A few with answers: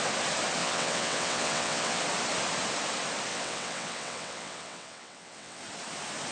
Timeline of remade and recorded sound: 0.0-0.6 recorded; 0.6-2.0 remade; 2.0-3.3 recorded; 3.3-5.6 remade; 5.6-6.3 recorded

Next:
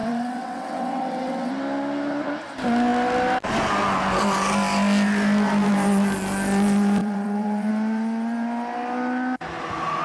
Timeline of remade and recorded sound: 0.0-1.5 remade; 1.5-7.0 recorded; 7.0-7.7 remade; 7.7-10.0 recorded